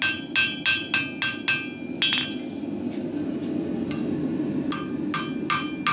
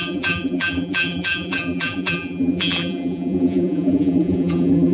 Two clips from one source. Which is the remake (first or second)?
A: second